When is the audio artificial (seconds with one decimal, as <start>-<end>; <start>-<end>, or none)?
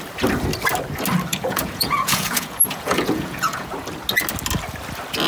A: 1.3-3.7